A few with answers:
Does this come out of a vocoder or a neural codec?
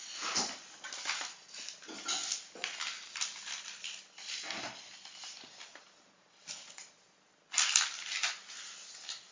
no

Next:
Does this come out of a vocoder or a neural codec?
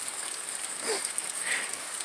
yes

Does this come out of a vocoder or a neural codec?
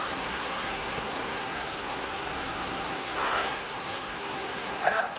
yes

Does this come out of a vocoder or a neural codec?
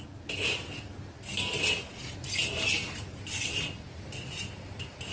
no